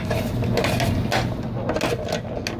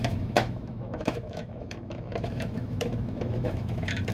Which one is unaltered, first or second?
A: first